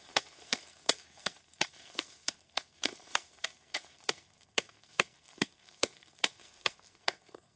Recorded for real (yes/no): no